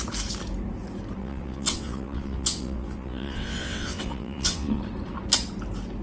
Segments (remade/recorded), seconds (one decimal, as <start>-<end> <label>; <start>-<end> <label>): 0.0-1.2 recorded; 1.2-4.8 remade; 4.8-6.0 recorded